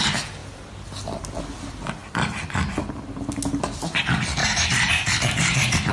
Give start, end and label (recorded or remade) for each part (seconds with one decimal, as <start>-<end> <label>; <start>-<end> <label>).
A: 0.0-4.4 recorded; 4.4-5.9 remade